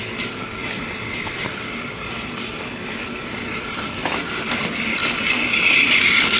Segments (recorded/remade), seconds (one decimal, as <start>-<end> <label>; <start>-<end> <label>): 0.0-0.6 recorded; 0.6-4.4 remade; 4.4-5.0 recorded; 5.0-5.9 remade; 5.9-6.4 recorded